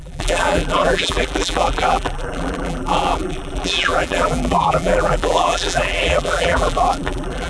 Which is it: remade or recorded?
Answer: remade